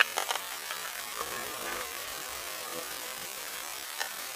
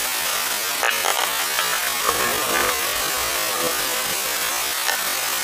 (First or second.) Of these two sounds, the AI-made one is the first